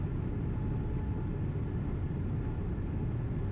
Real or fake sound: real